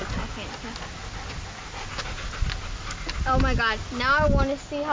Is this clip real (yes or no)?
yes